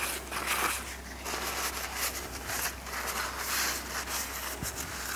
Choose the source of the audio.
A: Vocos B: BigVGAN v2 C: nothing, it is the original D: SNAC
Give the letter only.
C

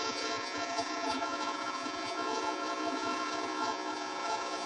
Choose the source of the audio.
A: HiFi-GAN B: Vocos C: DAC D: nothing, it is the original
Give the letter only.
B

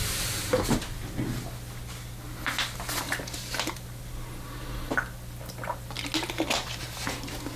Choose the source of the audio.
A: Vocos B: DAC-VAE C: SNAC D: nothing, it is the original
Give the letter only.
D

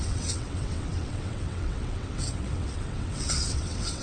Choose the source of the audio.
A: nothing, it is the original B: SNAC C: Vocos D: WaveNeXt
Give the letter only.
D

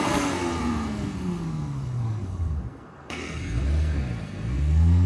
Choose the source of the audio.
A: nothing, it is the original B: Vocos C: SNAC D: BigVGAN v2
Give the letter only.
C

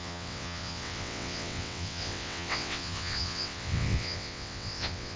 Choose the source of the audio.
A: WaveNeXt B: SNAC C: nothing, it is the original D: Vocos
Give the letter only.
A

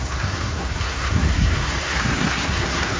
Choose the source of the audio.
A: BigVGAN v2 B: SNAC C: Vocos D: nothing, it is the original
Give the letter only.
B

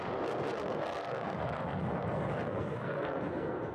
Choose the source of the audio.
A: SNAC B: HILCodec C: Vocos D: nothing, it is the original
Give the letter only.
A